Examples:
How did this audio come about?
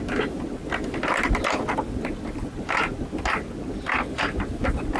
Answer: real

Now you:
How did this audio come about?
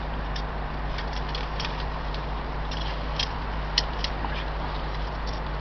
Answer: fake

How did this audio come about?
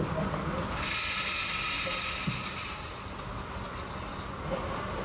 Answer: real